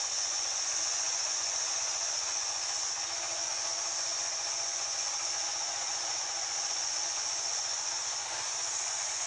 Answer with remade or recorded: remade